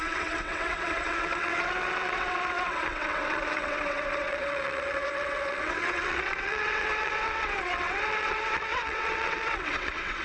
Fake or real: fake